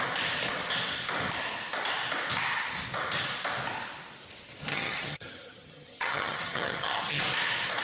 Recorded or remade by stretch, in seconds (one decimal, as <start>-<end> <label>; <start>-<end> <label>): 0.0-4.7 recorded; 4.7-7.2 remade; 7.2-7.8 recorded